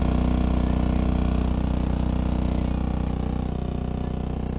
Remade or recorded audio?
recorded